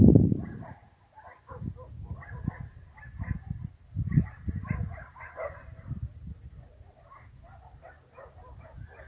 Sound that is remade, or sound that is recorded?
recorded